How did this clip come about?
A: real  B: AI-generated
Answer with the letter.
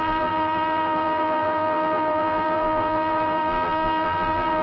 B